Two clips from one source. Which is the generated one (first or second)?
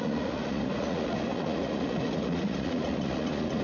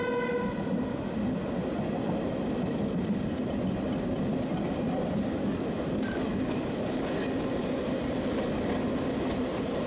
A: first